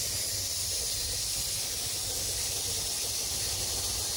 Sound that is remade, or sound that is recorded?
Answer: recorded